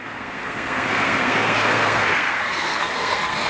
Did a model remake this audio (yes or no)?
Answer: yes